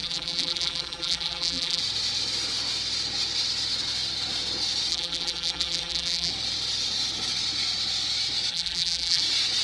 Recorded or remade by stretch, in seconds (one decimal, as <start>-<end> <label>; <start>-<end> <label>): 0.0-1.8 remade; 1.8-4.9 recorded; 4.9-6.3 remade; 6.3-8.5 recorded; 8.5-9.2 remade; 9.2-9.6 recorded